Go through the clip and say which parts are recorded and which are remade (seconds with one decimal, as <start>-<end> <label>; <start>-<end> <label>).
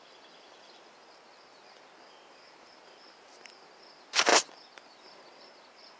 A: 0.0-6.0 recorded